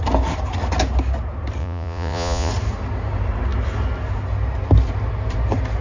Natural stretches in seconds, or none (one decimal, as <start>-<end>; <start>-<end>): 0.0-1.6; 2.5-5.8